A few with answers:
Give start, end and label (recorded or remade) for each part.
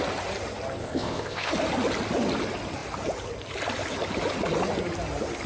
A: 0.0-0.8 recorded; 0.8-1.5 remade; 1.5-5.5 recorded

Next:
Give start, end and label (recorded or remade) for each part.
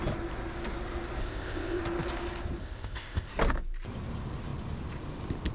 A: 0.0-1.2 recorded; 1.2-1.8 remade; 1.8-2.6 recorded; 2.6-3.3 remade; 3.3-5.5 recorded